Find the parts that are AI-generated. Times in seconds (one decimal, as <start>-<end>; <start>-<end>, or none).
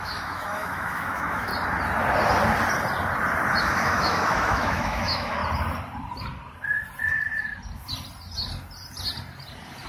0.0-1.5; 3.6-5.4